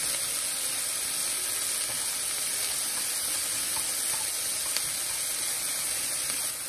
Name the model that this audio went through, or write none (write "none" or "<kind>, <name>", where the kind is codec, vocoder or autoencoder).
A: none